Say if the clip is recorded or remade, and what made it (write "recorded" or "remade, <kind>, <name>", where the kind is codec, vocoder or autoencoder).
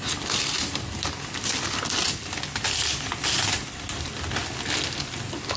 recorded